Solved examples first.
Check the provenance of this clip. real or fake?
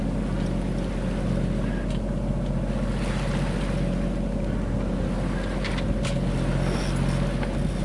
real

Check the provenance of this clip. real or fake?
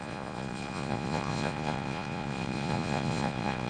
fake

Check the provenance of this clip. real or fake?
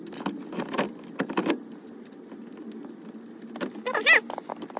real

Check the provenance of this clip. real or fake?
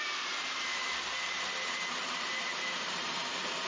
fake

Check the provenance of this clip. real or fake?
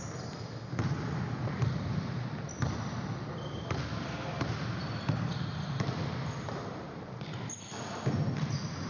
real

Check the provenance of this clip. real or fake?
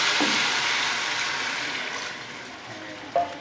real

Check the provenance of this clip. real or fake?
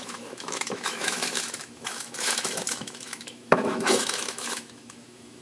fake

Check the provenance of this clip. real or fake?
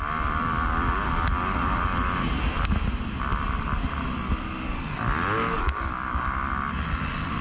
real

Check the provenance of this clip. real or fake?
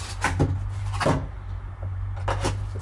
real